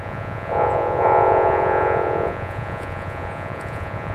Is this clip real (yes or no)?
no